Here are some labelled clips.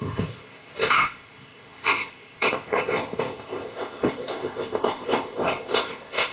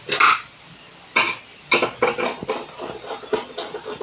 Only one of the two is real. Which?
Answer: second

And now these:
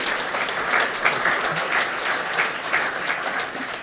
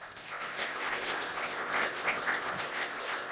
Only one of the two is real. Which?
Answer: first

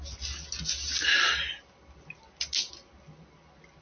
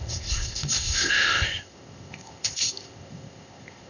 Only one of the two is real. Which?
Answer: first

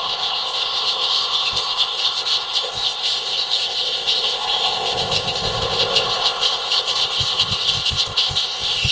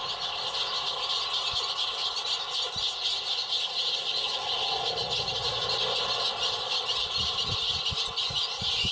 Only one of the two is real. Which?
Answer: second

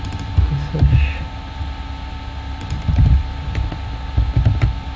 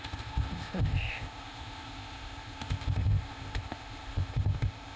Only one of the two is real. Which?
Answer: first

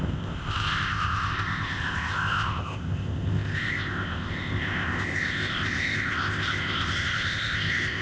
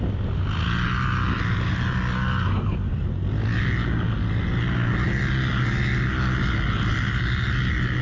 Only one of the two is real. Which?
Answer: second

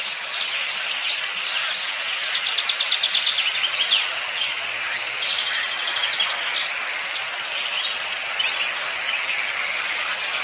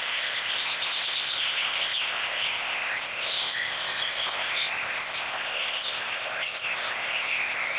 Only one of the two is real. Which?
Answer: first